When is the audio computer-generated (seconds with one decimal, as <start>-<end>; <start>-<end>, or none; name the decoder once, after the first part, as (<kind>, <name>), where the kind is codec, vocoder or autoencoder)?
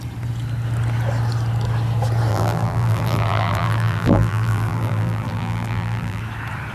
2.3-6.2 (vocoder, BigVGAN v2)